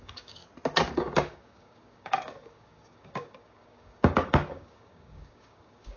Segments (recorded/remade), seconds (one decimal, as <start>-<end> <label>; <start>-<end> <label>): 0.0-0.4 remade; 0.4-0.9 recorded; 0.9-6.0 remade